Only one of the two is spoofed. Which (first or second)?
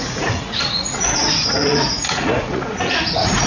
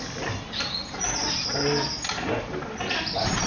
first